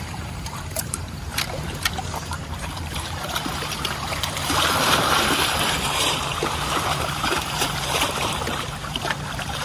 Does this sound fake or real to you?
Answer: fake